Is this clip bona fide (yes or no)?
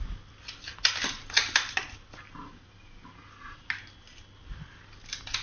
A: yes